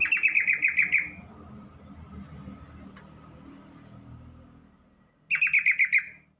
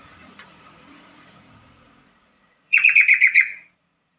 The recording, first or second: first